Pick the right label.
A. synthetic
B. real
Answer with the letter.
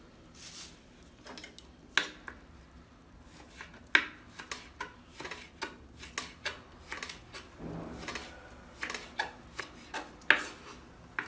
B